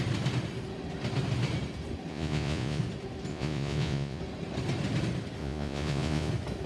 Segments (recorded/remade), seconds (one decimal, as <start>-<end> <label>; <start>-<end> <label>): 0.0-2.1 recorded; 2.1-2.8 remade; 2.8-3.3 recorded; 3.3-4.2 remade; 4.2-5.4 recorded; 5.4-6.3 remade; 6.3-6.7 recorded